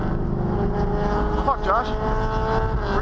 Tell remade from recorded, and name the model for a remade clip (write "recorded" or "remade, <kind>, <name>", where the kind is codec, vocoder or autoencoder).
recorded